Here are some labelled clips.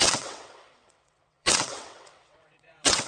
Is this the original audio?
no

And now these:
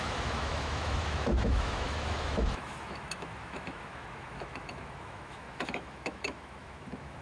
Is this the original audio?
no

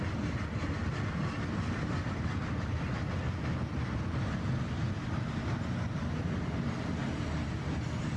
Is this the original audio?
yes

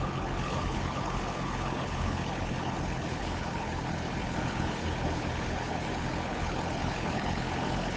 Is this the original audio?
no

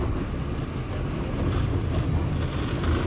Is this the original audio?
yes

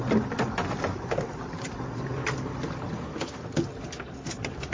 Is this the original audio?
yes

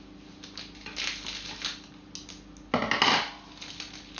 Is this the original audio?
yes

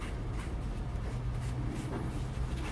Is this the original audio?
yes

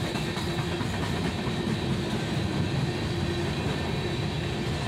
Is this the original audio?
yes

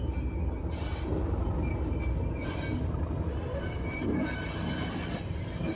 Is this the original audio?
yes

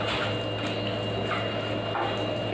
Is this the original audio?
yes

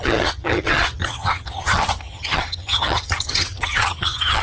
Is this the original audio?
no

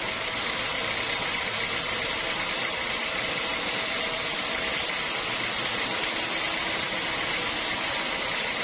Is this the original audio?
yes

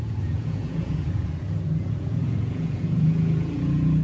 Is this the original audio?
no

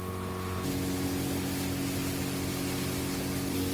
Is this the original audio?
yes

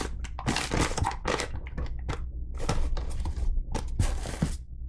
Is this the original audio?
yes